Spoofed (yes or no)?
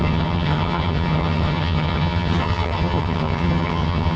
yes